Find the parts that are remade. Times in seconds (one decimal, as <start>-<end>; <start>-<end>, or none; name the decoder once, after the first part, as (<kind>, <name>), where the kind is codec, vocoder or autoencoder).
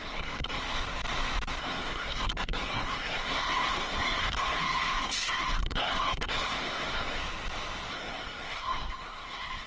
0.0-0.6 (codec, SNAC); 1.6-7.2; 7.9-9.7